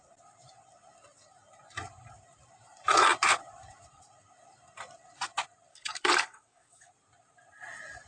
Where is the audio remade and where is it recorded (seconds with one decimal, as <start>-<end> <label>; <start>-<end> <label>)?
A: 0.0-5.7 recorded; 5.7-6.9 remade; 6.9-8.1 recorded